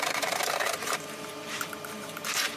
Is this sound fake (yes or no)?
yes